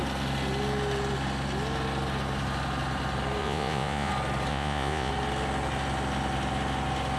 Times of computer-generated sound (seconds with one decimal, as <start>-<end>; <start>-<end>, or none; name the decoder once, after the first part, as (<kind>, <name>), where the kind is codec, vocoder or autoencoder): 3.4-4.1 (vocoder, Vocos); 4.5-5.1